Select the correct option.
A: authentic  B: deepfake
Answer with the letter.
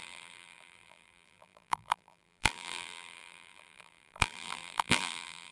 B